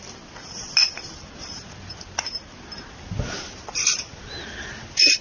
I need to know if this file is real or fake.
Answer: real